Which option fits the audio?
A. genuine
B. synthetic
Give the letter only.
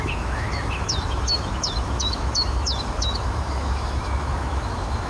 B